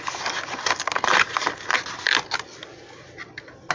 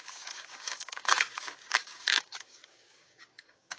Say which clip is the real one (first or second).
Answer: first